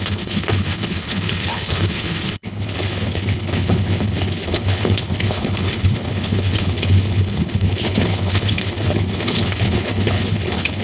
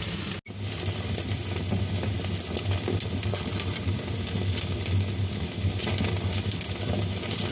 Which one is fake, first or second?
first